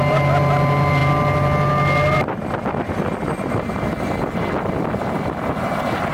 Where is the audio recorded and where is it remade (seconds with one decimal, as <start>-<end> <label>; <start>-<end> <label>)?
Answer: 0.0-6.1 recorded